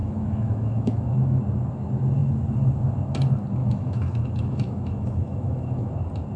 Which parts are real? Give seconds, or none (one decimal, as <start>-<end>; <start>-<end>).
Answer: 1.4-3.6; 5.9-6.4